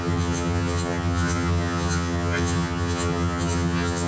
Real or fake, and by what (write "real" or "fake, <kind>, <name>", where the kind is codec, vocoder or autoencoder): fake, vocoder, HiFi-GAN